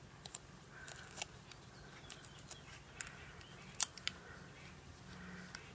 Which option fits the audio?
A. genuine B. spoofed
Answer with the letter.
A